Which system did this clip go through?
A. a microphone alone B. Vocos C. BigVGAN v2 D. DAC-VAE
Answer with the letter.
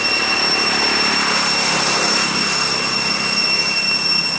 A